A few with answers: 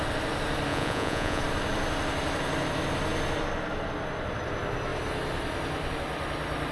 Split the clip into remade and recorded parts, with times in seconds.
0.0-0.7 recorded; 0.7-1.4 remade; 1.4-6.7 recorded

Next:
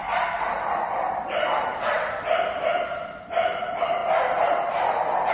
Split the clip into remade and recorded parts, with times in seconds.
0.0-3.2 remade; 3.2-5.3 recorded

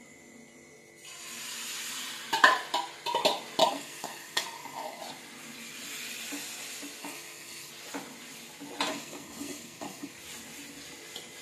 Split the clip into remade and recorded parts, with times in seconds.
0.0-3.6 recorded; 3.6-5.0 remade; 5.0-7.0 recorded; 7.0-7.7 remade; 7.7-8.9 recorded; 8.9-10.1 remade; 10.1-11.4 recorded

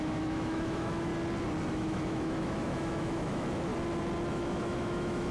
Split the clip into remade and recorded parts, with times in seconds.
0.0-1.1 remade; 1.1-1.7 recorded; 1.7-3.7 remade; 3.7-4.3 recorded; 4.3-5.3 remade

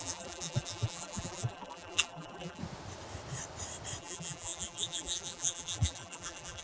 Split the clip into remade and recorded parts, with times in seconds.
0.0-2.6 remade; 2.6-4.0 recorded; 4.0-6.6 remade

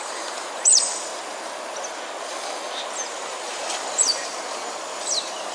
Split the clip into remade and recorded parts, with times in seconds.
0.0-1.1 remade; 1.1-3.1 recorded; 3.1-5.5 remade

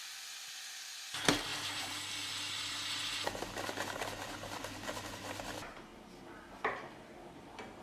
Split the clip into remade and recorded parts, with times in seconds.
0.0-7.8 recorded

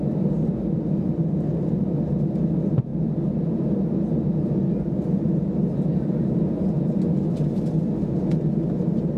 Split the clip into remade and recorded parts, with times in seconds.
0.0-9.2 recorded